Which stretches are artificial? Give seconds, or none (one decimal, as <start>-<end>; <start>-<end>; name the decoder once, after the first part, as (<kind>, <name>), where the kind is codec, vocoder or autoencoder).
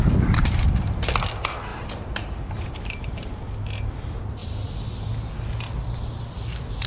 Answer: 0.0-0.8 (vocoder, BigVGAN v2); 1.7-3.3